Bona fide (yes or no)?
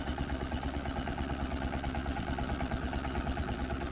no